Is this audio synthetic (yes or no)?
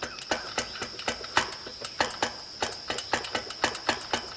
no